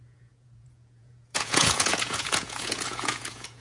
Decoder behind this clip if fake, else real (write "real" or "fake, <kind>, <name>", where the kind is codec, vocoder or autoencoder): fake, vocoder, Vocos